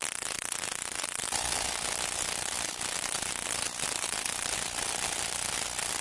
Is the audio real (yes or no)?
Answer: yes